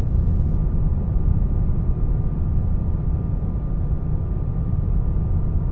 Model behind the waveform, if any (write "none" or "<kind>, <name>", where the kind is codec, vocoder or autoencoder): none